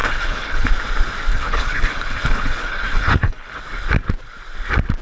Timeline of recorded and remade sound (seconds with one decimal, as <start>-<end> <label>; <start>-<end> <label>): 0.0-0.7 remade; 0.7-1.3 recorded; 1.3-3.6 remade; 3.6-5.0 recorded